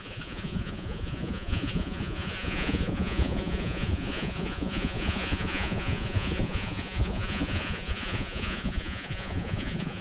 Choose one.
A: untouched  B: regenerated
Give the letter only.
B